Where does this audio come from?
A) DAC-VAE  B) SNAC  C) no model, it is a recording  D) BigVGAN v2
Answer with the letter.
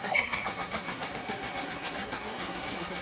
B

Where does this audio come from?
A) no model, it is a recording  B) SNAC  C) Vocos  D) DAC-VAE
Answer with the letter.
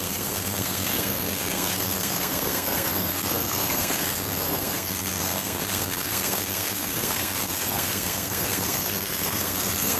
B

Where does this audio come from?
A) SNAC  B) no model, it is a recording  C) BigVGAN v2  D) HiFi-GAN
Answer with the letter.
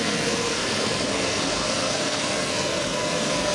A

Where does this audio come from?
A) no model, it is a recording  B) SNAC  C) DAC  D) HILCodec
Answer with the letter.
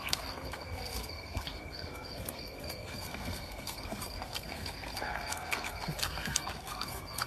B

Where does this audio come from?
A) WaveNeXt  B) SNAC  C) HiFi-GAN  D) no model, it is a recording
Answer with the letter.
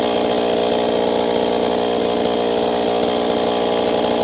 D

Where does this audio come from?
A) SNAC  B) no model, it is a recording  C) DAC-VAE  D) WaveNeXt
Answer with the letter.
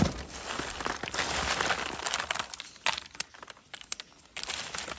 B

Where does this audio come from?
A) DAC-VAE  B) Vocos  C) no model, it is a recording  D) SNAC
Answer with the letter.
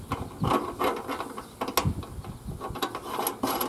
C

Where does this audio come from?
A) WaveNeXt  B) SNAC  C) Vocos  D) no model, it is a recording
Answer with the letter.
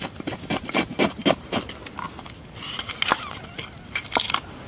D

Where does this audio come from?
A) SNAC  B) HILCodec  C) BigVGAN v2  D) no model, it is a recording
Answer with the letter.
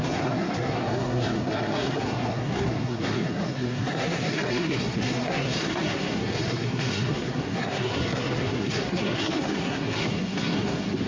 A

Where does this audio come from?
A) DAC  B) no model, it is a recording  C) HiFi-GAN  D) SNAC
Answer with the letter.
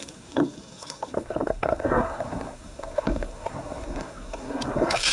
D